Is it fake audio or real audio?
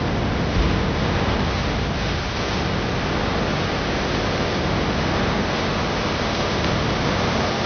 real